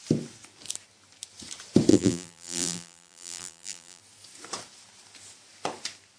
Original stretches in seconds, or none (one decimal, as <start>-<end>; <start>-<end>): 0.0-1.9; 4.0-6.2